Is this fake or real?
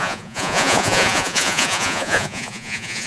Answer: fake